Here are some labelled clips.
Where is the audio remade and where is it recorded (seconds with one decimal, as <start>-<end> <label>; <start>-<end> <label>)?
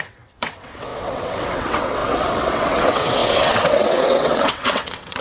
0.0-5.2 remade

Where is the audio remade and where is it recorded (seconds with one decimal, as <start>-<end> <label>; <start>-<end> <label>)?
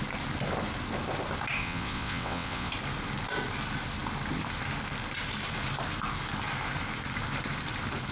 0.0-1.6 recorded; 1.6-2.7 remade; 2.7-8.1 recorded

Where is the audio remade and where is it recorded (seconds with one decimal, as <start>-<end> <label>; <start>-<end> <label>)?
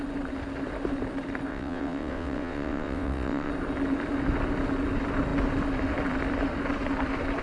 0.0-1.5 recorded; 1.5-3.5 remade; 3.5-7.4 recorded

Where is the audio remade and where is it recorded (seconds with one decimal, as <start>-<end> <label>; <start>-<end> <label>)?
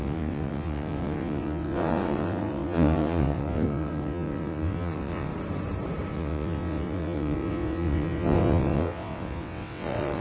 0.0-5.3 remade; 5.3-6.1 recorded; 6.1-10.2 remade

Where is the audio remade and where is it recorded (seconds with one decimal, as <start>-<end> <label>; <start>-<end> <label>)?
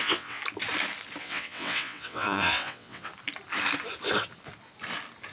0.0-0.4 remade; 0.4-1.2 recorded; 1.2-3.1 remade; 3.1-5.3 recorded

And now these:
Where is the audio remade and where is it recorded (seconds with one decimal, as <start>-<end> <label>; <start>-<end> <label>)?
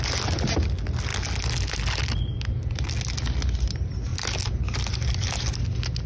0.0-6.1 recorded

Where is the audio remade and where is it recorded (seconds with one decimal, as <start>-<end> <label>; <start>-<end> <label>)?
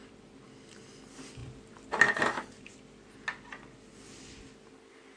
0.0-5.2 recorded